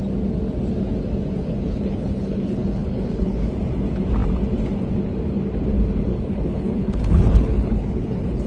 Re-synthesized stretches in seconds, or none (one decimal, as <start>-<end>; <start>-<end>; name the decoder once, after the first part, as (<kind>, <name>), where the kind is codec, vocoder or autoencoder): 1.4-3.5 (codec, HILCodec); 6.1-8.5